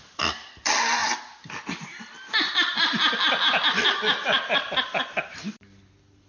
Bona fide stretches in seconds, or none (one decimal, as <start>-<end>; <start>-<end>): 0.0-6.3